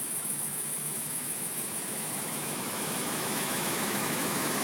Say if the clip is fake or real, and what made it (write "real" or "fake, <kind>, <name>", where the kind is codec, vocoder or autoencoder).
fake, autoencoder, DAC-VAE